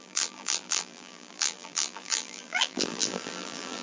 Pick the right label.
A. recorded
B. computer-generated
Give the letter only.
B